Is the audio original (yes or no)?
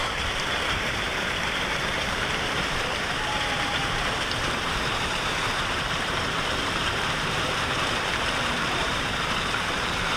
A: no